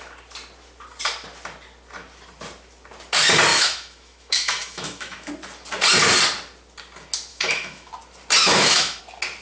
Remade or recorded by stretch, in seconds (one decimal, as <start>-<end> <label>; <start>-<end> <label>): 0.0-3.5 recorded; 3.5-5.3 remade; 5.3-7.3 recorded; 7.3-7.9 remade; 7.9-8.4 recorded; 8.4-9.0 remade; 9.0-9.4 recorded